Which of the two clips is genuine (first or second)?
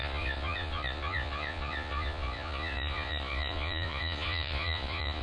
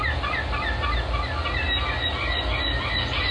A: second